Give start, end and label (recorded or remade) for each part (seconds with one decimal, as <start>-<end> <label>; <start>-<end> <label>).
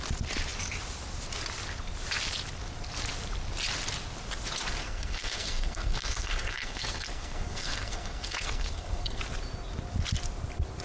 0.0-4.8 recorded; 4.8-9.2 remade; 9.2-10.8 recorded